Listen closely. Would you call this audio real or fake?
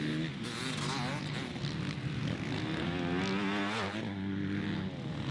real